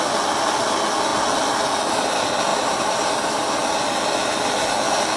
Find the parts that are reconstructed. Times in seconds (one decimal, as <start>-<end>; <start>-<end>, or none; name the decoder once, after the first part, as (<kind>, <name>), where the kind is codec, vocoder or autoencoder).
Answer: 2.5-3.1 (vocoder, BigVGAN v2)